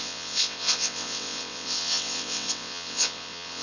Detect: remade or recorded remade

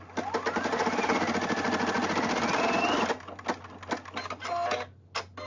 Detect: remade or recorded recorded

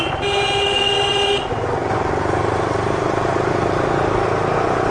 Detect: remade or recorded recorded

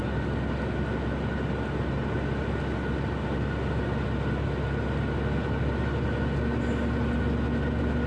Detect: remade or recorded recorded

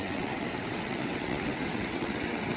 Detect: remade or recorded remade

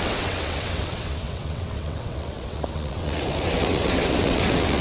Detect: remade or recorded remade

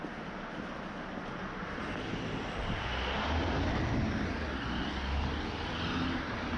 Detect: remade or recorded recorded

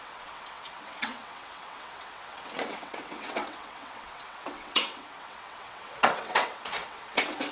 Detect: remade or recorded remade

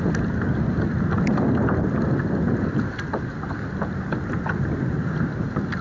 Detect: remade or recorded recorded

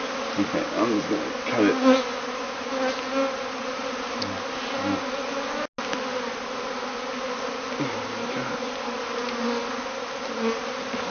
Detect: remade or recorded recorded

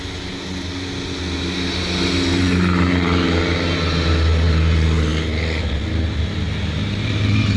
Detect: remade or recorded recorded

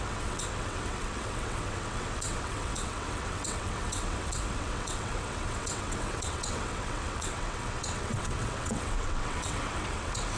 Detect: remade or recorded remade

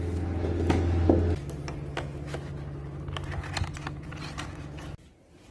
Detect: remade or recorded recorded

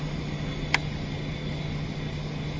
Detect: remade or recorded recorded